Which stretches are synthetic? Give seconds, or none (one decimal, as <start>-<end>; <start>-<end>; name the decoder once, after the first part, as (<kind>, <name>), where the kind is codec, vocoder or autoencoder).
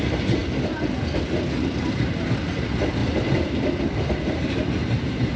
3.0-3.8 (vocoder, BigVGAN v2)